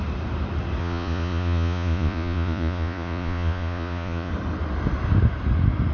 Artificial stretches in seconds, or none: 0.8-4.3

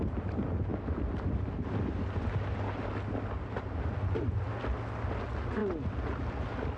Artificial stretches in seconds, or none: none

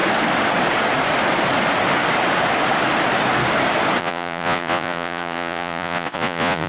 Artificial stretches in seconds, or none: 4.0-6.7

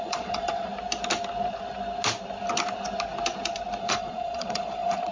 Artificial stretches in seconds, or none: 0.0-0.7; 3.8-5.1

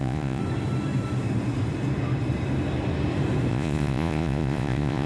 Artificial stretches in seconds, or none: 0.0-0.4; 3.5-5.1

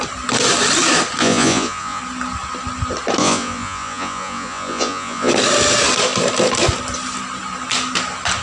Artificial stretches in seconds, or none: 1.2-2.0; 3.2-5.3

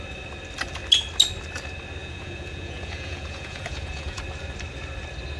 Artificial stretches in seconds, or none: 2.0-4.2

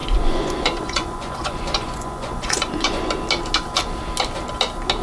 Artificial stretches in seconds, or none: 0.0-3.0